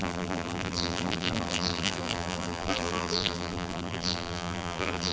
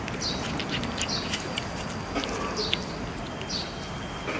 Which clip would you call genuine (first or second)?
second